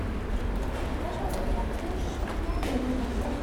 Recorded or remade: recorded